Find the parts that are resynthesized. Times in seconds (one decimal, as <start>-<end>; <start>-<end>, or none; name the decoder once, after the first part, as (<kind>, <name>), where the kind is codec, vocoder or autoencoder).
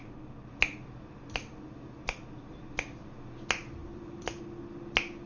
3.8-4.4 (vocoder, BigVGAN v2)